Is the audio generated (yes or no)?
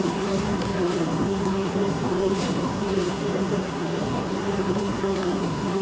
yes